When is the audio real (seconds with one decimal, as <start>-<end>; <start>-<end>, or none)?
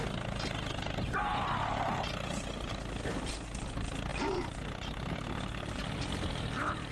0.0-6.9